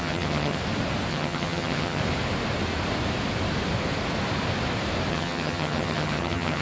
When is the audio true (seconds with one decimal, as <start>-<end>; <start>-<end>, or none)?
0.6-1.1; 2.0-5.1